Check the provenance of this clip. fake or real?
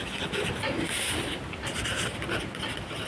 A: real